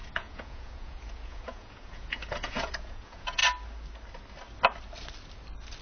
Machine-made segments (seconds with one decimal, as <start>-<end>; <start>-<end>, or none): 0.0-3.4